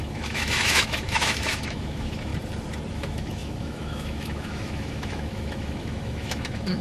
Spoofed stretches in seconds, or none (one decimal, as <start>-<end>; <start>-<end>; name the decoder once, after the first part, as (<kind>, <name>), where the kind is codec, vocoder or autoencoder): 0.0-2.3 (autoencoder, DAC-VAE); 2.9-6.8